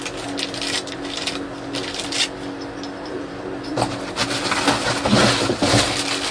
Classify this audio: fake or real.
real